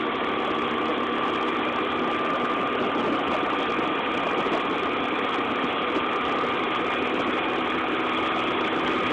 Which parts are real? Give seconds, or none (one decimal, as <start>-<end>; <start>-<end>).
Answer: 0.0-9.1